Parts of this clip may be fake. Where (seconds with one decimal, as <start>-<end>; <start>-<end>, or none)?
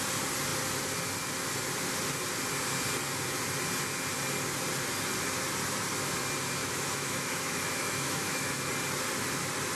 6.6-8.7